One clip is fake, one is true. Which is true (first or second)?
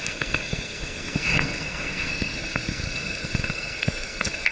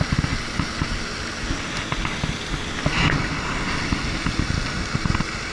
second